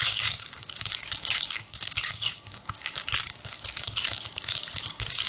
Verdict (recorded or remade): remade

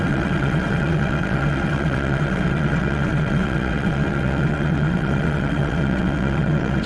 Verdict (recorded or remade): remade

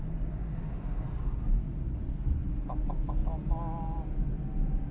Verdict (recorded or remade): recorded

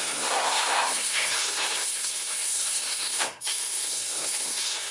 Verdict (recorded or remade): remade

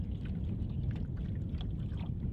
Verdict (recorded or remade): recorded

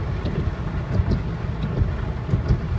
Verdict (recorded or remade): recorded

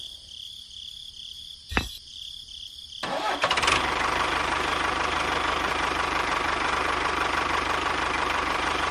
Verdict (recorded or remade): remade